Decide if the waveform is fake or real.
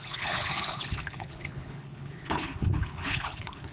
fake